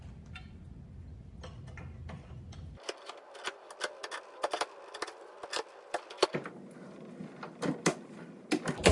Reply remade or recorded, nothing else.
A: recorded